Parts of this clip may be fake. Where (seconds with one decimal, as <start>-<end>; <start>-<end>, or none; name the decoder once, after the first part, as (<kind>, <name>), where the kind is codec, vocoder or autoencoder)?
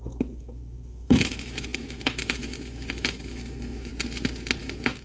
0.0-3.9 (autoencoder, DAC-VAE); 4.6-5.0